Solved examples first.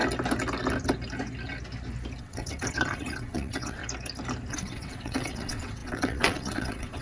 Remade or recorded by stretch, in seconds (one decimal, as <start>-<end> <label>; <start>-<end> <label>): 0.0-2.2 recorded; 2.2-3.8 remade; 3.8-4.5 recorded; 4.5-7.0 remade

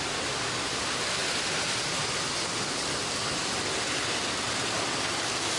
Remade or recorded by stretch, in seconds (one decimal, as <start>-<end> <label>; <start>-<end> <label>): 0.0-5.6 recorded

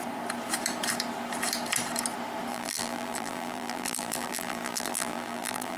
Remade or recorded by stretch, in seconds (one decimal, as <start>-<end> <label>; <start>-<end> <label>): 0.0-2.5 recorded; 2.5-5.8 remade

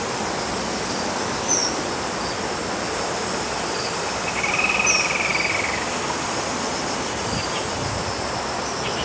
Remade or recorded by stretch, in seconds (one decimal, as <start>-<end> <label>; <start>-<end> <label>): 0.0-9.0 recorded

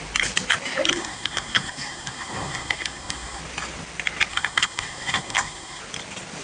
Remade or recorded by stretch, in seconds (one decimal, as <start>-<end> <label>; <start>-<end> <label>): 0.0-0.9 recorded; 0.9-3.4 remade; 3.4-4.3 recorded; 4.3-5.8 remade; 5.8-6.4 recorded